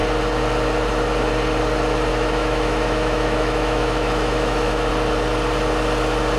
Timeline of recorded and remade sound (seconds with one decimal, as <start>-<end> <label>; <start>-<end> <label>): 0.0-2.1 recorded; 2.1-4.9 remade; 4.9-6.4 recorded